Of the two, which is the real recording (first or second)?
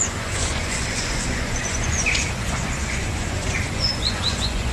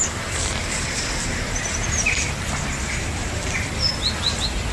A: second